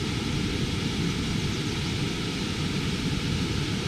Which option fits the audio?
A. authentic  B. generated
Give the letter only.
A